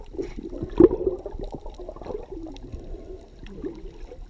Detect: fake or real real